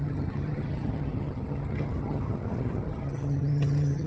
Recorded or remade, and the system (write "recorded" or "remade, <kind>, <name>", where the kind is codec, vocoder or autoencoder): remade, vocoder, HiFi-GAN